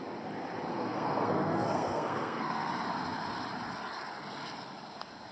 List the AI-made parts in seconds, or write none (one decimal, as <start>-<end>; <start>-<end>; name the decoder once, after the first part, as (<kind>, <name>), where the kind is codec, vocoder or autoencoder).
0.7-2.7 (codec, SNAC)